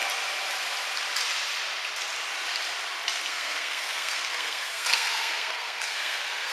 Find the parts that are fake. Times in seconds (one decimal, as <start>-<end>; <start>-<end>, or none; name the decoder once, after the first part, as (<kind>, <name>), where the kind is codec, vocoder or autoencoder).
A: 3.3-6.5 (codec, SNAC)